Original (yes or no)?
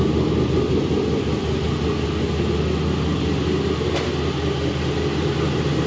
yes